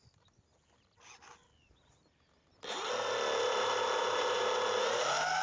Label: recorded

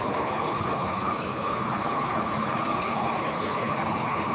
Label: remade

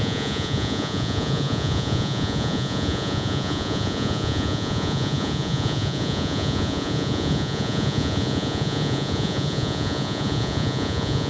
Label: remade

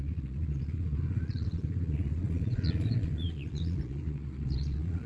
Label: remade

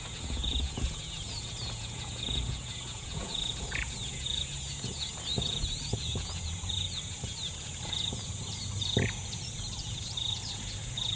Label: remade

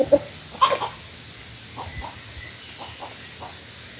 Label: recorded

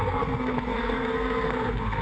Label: remade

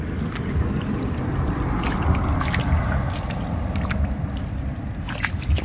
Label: recorded